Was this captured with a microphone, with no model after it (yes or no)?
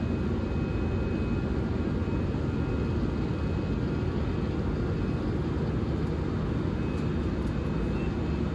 yes